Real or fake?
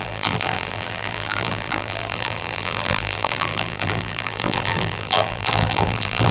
fake